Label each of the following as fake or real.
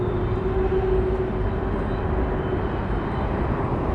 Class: real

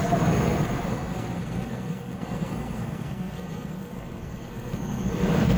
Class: fake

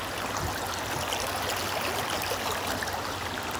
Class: real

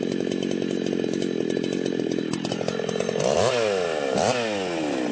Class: real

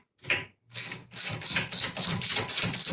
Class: real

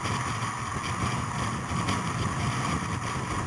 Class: real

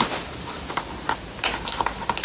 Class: real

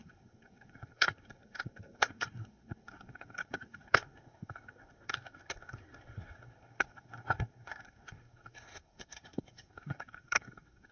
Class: fake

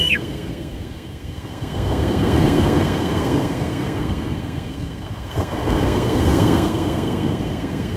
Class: fake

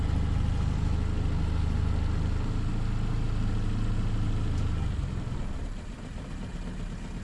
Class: real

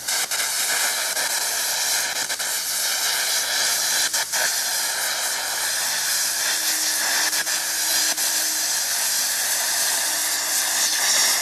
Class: real